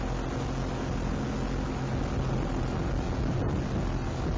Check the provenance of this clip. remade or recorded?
recorded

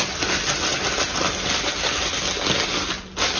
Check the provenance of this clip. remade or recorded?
recorded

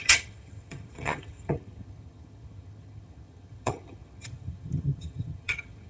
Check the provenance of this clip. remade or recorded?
remade